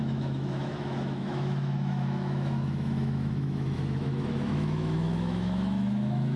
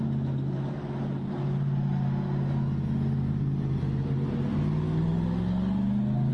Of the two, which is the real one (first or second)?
second